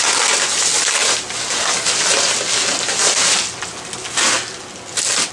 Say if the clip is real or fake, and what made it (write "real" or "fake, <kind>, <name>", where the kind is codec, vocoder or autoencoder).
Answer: real